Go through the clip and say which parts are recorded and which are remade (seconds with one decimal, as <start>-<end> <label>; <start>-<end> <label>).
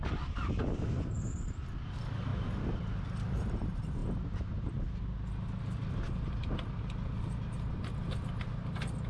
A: 0.0-9.1 recorded